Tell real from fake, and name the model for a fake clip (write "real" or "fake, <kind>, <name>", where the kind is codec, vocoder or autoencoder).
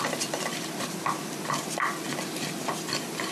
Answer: real